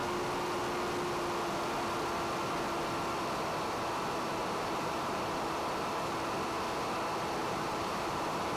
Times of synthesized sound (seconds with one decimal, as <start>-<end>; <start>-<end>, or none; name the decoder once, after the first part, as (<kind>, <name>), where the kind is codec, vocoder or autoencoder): 4.4-6.1 (vocoder, BigVGAN v2); 7.4-8.6